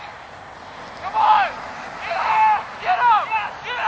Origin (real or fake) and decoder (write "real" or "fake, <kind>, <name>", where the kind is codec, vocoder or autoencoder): real